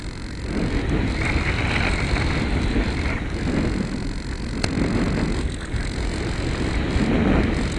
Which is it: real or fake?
real